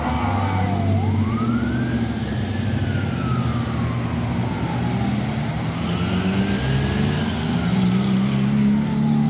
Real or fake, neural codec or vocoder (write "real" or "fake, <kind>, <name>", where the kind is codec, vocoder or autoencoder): real